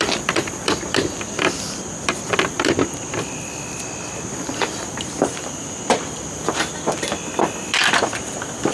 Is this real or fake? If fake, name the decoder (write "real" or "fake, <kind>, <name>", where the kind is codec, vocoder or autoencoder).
fake, vocoder, BigVGAN v2